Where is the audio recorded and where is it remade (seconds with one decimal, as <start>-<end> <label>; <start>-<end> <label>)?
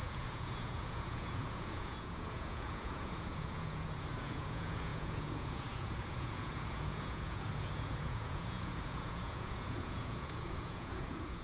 0.0-11.4 remade